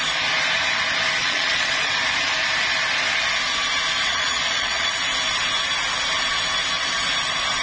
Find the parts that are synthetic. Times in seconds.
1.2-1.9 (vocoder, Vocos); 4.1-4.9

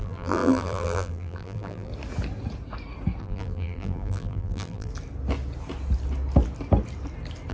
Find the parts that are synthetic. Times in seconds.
0.0-1.9 (vocoder, BigVGAN v2); 3.2-4.9

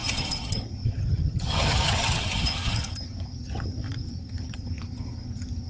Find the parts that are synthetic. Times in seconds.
0.0-5.7 (vocoder, HiFi-GAN)

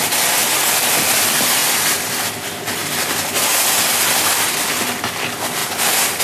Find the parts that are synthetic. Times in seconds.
none

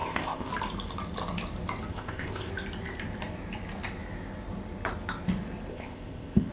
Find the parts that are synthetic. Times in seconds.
0.0-0.5 (codec, ZipCodec); 1.9-2.5; 5.7-6.5